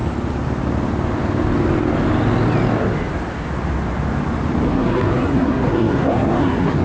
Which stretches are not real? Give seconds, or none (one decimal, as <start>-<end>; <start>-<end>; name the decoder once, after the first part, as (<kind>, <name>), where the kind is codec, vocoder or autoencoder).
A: 4.7-6.8 (codec, SNAC)